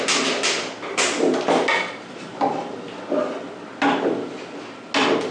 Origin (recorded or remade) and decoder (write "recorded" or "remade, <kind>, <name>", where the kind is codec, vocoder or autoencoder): recorded